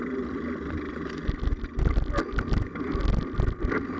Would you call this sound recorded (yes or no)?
yes